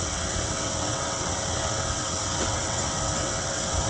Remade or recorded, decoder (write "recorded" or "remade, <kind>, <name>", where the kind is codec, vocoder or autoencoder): remade, vocoder, WaveNeXt